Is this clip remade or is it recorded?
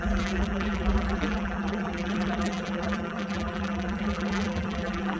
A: remade